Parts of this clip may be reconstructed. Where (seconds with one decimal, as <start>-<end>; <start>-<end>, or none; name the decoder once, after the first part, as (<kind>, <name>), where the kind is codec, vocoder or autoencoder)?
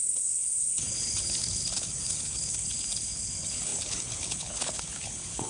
0.0-5.5 (codec, HILCodec)